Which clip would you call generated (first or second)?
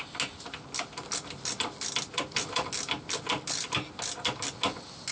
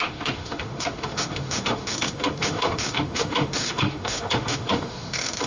second